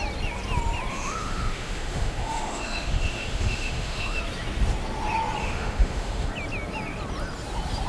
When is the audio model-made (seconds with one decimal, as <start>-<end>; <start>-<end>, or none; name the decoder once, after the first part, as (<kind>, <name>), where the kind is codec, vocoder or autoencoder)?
0.9-4.2 (autoencoder, DAC-VAE); 5.4-6.3